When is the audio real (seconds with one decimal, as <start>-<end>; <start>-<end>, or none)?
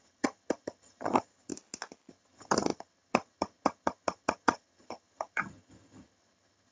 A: 1.5-2.1